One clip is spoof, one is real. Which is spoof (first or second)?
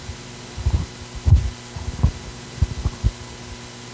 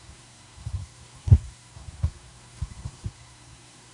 second